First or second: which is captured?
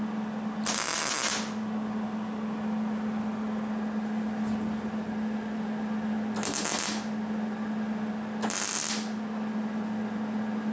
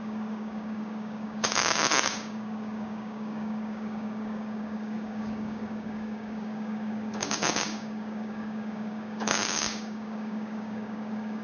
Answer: first